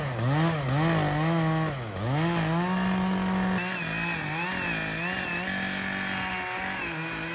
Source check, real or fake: real